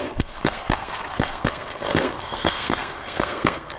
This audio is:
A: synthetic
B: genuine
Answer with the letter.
A